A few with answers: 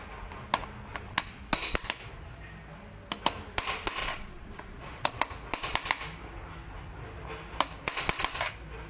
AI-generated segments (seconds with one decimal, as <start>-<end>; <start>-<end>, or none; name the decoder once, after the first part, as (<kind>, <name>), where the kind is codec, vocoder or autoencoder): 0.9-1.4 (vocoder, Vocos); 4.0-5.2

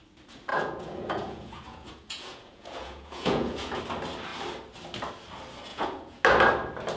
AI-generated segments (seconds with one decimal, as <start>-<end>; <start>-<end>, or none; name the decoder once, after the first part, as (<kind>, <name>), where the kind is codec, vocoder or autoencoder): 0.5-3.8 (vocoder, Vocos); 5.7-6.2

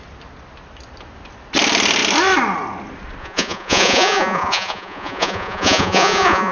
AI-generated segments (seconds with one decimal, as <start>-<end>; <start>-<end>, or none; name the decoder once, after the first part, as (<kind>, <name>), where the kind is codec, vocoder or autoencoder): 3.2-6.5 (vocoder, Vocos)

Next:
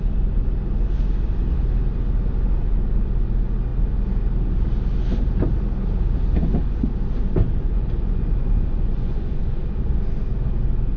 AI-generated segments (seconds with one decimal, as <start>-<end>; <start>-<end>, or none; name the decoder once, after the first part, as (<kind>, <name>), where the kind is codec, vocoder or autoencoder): 7.4-9.4 (vocoder, Vocos)

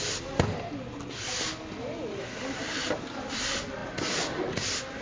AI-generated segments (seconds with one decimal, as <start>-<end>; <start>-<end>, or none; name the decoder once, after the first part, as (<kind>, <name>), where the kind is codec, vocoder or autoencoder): none

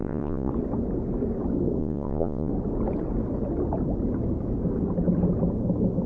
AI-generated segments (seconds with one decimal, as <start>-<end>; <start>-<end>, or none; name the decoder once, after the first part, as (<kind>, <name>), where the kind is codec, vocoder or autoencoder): 0.0-0.5 (vocoder, Vocos); 1.8-2.5

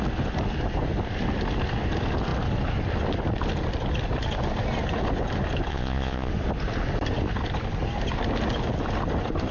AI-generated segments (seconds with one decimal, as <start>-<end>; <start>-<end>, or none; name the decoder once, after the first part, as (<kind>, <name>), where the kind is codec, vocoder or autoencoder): 5.7-6.3 (vocoder, Vocos)